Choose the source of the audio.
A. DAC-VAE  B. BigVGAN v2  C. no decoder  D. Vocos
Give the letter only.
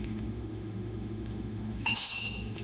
A